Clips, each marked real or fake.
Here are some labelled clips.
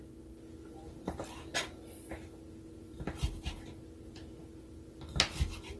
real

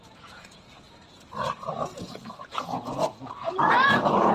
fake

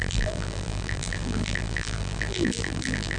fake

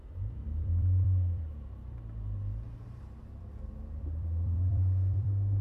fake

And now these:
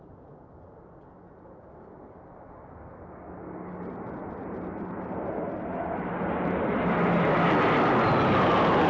real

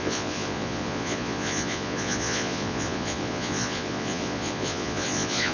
fake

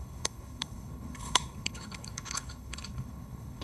fake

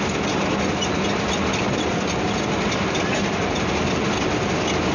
real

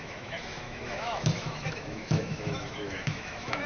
fake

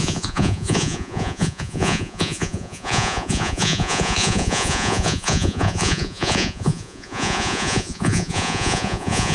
fake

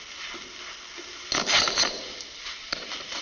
real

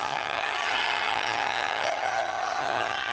fake